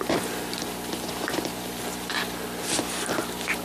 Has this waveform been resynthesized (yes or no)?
no